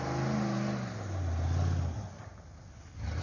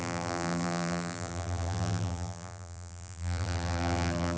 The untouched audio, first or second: first